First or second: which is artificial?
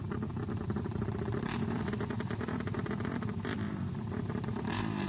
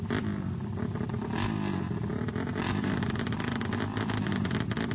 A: first